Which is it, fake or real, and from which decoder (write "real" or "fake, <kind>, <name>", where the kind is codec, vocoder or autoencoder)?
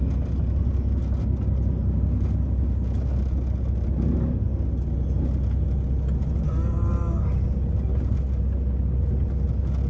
real